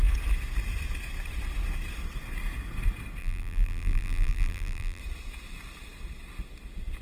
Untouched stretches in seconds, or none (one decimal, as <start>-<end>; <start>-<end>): 0.0-3.2; 5.0-7.0